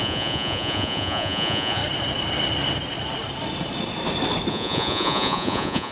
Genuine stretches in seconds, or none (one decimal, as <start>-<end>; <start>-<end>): 1.8-4.5